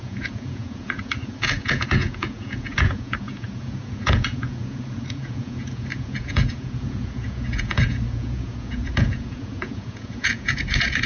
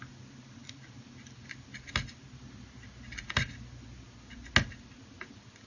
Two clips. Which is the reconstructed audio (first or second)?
first